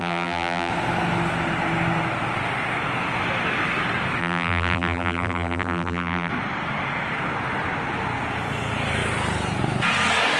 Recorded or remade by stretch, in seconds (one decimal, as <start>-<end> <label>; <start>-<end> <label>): 0.0-0.7 remade; 0.7-4.2 recorded; 4.2-6.3 remade; 6.3-10.4 recorded